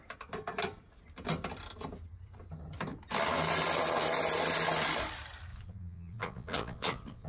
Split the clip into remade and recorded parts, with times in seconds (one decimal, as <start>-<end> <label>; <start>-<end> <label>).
0.0-5.5 recorded; 5.5-7.3 remade